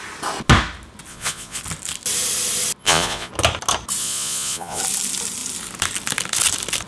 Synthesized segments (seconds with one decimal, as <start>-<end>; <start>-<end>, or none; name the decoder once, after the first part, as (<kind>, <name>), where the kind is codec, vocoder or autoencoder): 1.1-1.6 (vocoder, Vocos); 2.8-3.3; 4.0-4.8